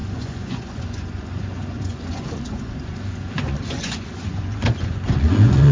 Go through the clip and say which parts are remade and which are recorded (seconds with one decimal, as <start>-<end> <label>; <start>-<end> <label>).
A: 0.0-5.7 remade